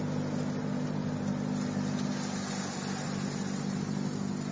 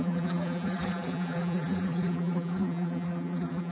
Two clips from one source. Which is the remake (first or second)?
second